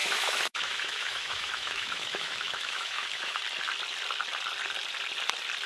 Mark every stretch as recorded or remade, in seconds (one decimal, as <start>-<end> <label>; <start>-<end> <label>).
0.0-3.4 remade; 3.4-5.7 recorded